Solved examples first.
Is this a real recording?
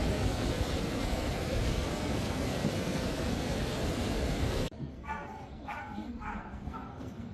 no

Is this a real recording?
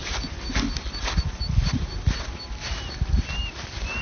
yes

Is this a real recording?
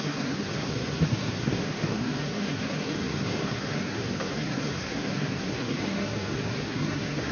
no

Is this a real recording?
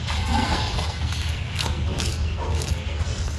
no